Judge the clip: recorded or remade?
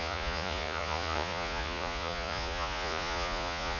remade